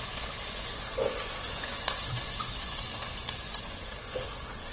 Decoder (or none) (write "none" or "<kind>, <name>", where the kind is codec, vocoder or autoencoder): vocoder, Vocos